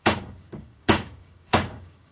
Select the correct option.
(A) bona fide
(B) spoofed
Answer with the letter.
B